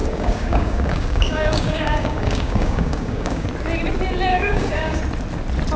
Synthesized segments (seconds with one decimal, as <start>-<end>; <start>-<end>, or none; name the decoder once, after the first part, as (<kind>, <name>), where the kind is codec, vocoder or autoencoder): 0.0-3.5 (codec, DAC); 4.3-5.0

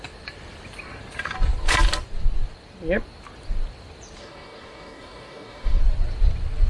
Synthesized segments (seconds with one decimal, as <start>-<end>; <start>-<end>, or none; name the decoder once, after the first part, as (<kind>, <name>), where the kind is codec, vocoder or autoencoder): 4.2-5.8 (codec, DAC)

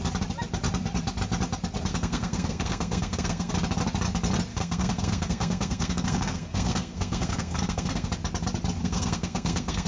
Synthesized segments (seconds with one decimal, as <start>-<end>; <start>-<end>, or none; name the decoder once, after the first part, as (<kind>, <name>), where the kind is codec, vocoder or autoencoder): 1.9-3.5 (codec, SNAC); 4.5-8.1; 8.8-9.9

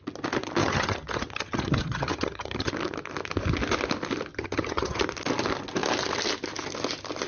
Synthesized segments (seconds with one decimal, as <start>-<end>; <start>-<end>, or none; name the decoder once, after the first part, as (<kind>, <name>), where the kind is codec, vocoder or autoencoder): 0.6-2.7 (vocoder, HiFi-GAN); 4.3-5.0